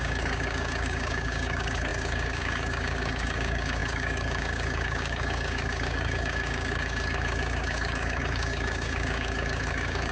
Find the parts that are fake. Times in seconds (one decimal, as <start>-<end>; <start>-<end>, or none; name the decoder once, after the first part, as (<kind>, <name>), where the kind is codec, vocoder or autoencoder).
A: 0.0-10.1 (codec, DAC)